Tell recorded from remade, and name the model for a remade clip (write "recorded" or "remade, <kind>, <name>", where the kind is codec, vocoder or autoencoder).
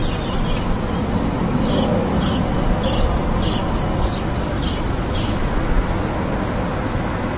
recorded